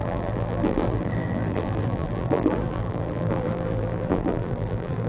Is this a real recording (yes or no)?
no